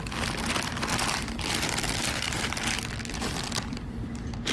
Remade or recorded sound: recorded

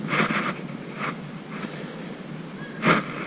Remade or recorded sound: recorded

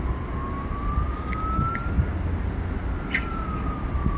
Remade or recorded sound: recorded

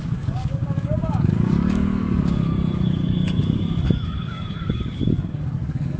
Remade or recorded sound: remade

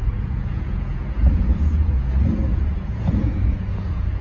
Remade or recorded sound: remade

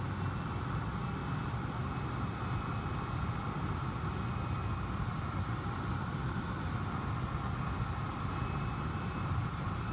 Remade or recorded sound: recorded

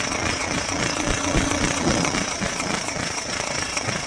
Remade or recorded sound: remade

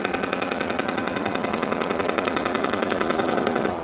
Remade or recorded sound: remade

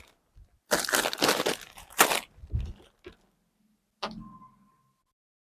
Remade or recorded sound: recorded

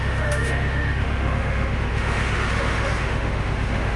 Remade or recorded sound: remade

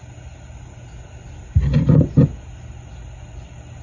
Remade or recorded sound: recorded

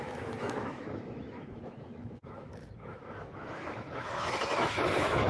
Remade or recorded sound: remade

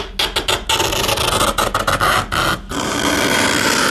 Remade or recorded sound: recorded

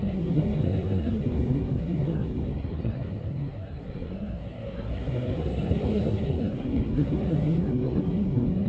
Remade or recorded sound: remade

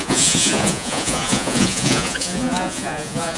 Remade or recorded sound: remade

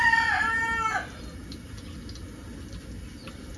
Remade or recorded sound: recorded